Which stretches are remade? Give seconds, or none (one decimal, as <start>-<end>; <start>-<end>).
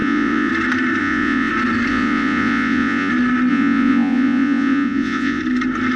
0.0-0.5; 1.0-1.5; 1.9-3.1; 3.5-5.4